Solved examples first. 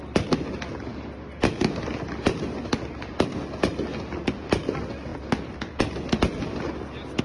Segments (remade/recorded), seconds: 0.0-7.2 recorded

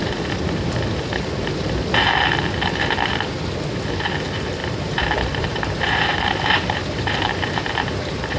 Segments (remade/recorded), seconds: 0.0-4.6 recorded; 4.6-8.4 remade

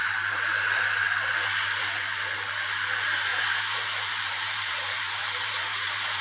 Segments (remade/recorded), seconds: 0.0-3.3 recorded; 3.3-6.2 remade

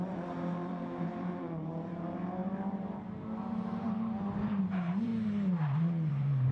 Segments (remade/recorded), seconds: 0.0-5.1 remade; 5.1-6.1 recorded; 6.1-6.5 remade

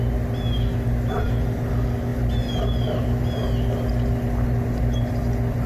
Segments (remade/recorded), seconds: 0.0-5.7 recorded